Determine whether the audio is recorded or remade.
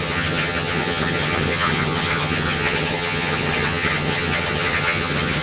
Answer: remade